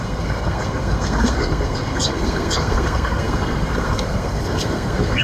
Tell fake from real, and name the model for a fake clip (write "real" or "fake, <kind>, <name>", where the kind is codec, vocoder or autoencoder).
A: fake, codec, SNAC